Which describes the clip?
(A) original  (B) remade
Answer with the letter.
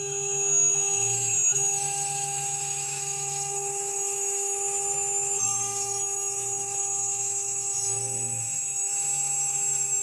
B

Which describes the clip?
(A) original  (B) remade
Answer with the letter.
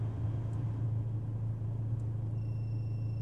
A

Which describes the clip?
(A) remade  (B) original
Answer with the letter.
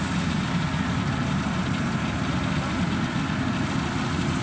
B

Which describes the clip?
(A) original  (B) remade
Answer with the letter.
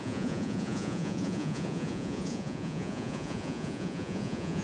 B